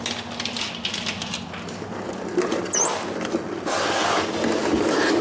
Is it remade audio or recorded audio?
recorded